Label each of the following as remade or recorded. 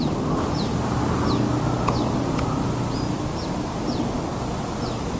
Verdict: recorded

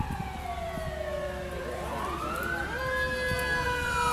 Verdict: recorded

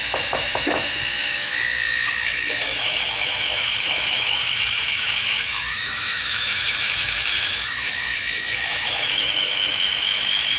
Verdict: remade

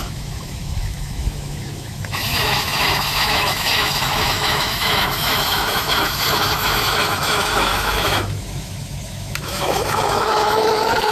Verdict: remade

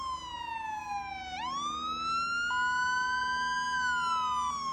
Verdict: recorded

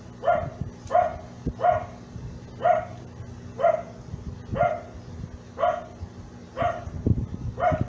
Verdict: recorded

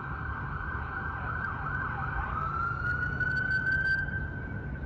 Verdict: recorded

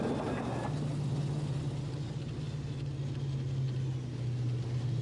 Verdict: recorded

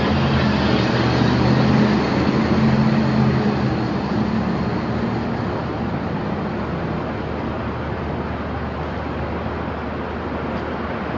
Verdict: recorded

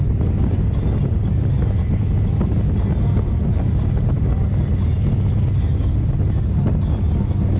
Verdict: recorded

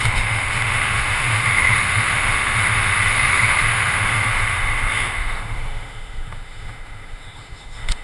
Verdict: remade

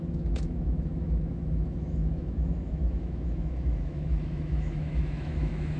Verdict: remade